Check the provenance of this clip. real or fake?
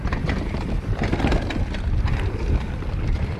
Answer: real